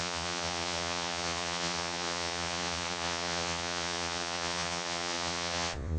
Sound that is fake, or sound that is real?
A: fake